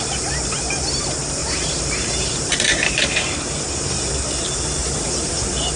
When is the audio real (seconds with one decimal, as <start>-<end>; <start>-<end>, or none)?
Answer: 0.0-1.4; 3.6-4.8; 5.3-5.8